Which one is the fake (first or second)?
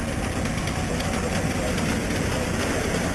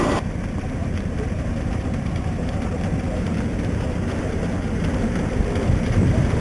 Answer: second